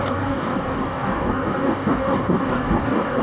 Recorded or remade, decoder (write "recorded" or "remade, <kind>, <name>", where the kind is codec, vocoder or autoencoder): remade, codec, DAC